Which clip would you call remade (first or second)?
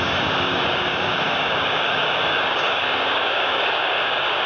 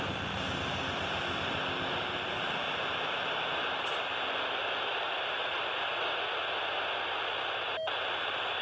first